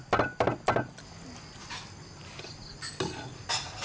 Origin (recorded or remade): recorded